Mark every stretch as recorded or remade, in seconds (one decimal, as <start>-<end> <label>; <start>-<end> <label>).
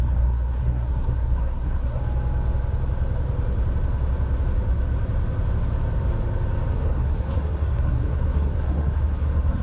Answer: 0.0-2.0 remade; 2.0-6.7 recorded; 6.7-9.6 remade